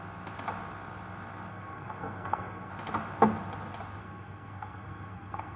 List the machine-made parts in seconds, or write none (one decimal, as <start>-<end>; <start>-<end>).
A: 1.5-2.7; 4.0-5.6